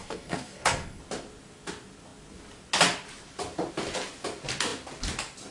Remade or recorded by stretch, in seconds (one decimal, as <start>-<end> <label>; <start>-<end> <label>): 0.0-1.0 remade; 1.0-5.5 recorded